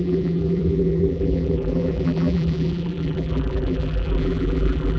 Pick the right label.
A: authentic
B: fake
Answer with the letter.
B